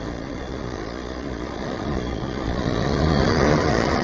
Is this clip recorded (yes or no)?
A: no